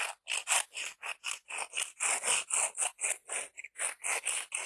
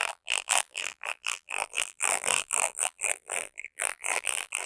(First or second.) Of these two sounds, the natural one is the first